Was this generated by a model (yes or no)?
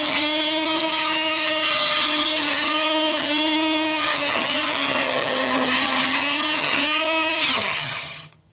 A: yes